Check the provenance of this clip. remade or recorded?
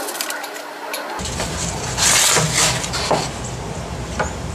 recorded